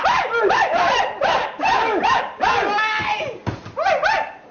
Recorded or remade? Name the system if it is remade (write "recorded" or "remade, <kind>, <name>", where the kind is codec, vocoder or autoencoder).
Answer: recorded